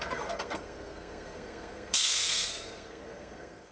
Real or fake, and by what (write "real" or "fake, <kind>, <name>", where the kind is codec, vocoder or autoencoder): fake, codec, SNAC